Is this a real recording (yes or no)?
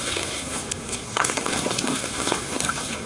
no